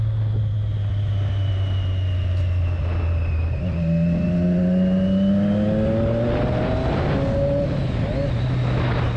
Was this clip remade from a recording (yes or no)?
no